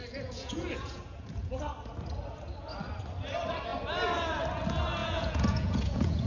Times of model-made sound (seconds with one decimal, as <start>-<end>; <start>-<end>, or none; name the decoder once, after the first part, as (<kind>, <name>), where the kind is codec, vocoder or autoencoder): 0.0-1.6 (vocoder, Vocos); 5.0-6.3